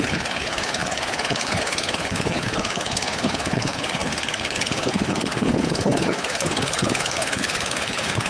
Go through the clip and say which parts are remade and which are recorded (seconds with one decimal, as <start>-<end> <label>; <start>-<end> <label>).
0.0-8.3 remade